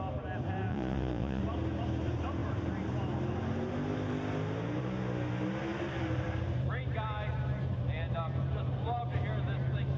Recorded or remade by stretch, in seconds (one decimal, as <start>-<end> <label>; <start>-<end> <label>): 0.0-0.7 recorded; 0.7-1.4 remade; 1.4-10.0 recorded